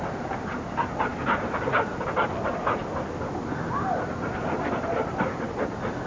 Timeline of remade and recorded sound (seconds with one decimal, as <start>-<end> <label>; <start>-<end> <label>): 0.0-6.1 recorded